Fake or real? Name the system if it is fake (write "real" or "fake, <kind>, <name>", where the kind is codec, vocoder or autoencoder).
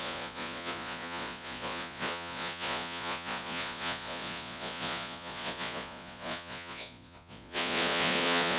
fake, vocoder, Vocos